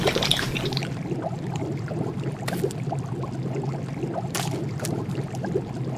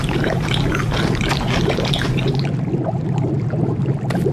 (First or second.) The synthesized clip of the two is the first